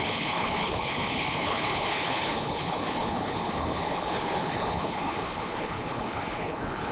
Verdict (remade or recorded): remade